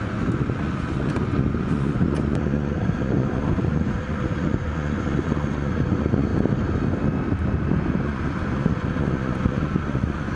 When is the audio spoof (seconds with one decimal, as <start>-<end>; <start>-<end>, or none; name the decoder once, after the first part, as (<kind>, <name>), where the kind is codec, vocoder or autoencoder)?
0.0-6.3 (vocoder, Vocos); 8.0-10.4